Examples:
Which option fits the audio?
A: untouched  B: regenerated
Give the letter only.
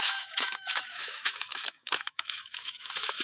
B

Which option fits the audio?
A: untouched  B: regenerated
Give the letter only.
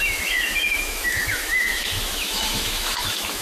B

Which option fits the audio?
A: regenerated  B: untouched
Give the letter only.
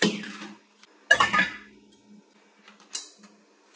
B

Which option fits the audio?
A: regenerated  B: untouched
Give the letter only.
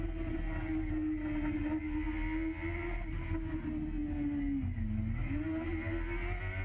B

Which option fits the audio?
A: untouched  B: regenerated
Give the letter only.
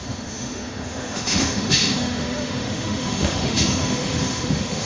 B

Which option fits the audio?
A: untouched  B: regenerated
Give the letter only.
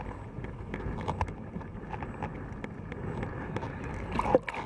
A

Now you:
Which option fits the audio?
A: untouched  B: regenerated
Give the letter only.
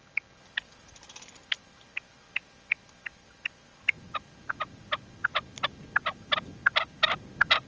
A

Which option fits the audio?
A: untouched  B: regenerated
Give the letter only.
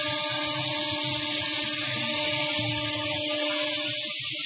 A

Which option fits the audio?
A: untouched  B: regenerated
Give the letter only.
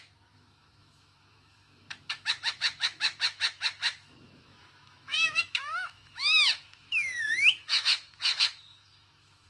B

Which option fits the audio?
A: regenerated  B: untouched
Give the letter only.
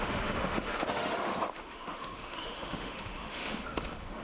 A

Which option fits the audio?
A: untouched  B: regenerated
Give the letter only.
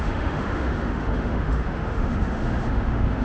B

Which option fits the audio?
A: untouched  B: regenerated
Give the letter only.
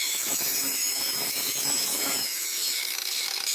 B